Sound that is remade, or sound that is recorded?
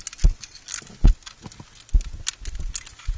recorded